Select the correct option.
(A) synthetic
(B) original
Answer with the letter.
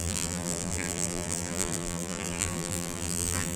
A